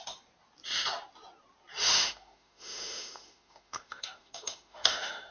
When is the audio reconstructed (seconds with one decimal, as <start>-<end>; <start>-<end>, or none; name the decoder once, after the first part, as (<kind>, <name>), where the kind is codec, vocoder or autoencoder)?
1.9-5.3 (autoencoder, DAC-VAE)